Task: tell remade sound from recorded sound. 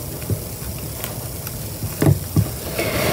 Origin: recorded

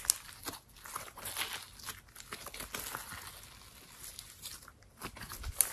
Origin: recorded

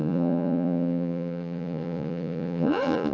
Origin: remade